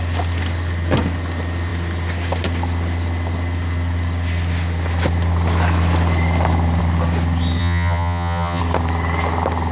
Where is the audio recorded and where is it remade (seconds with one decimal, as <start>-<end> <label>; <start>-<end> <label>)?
0.0-7.6 recorded; 7.6-8.6 remade; 8.6-9.7 recorded